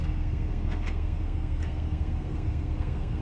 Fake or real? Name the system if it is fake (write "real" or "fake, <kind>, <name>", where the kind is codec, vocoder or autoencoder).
fake, codec, SNAC